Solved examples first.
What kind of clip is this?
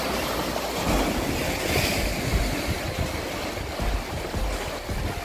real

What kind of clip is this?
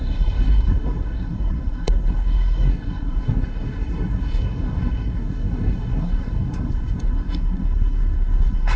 fake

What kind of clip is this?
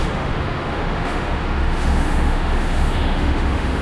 fake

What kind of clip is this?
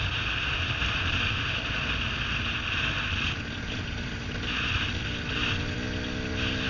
real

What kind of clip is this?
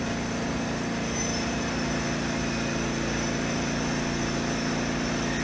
real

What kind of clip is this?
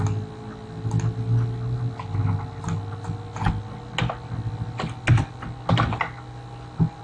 real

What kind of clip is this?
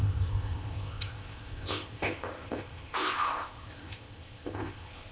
fake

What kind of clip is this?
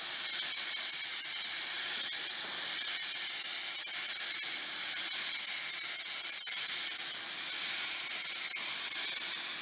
real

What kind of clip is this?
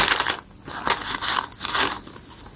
real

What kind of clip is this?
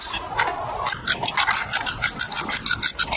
real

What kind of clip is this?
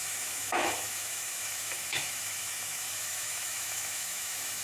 fake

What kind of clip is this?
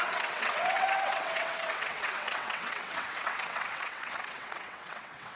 fake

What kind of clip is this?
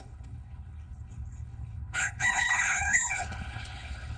fake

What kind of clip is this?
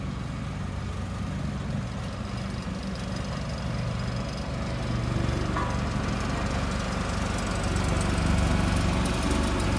real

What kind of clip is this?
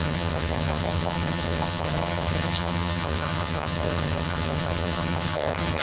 fake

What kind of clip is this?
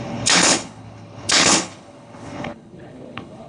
fake